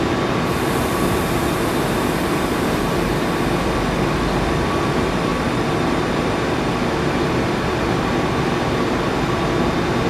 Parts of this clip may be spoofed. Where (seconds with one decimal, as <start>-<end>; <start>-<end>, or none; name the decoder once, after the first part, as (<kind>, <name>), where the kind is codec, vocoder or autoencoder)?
5.3-5.9 (vocoder, BigVGAN v2)